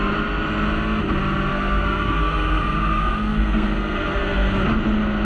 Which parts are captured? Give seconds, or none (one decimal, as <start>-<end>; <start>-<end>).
0.0-1.5; 4.6-5.2